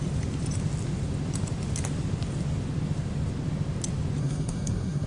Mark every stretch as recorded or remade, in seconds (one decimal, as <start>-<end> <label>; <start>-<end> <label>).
0.0-4.2 recorded; 4.2-5.1 remade